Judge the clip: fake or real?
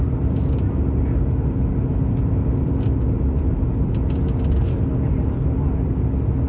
real